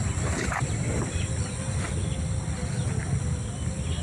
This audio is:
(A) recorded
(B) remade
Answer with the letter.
A